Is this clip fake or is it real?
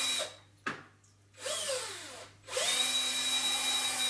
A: real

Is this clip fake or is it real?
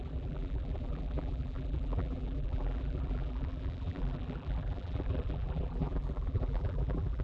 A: fake